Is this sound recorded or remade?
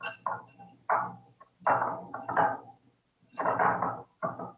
recorded